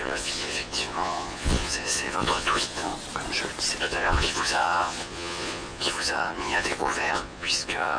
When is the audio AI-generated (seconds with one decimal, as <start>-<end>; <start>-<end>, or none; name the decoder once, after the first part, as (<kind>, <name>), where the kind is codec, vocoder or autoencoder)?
0.0-2.9 (vocoder, Vocos); 3.8-8.0